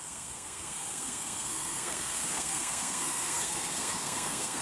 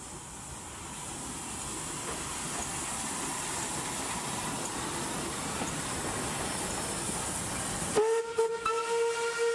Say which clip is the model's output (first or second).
first